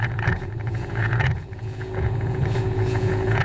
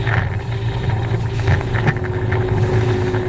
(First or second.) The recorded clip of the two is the second